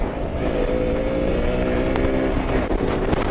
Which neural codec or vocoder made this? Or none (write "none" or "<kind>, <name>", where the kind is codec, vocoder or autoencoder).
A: vocoder, BigVGAN v2